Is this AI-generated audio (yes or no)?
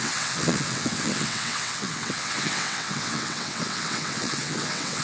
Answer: yes